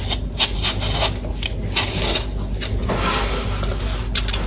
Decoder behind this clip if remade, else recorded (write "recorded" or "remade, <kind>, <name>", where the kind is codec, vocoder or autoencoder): recorded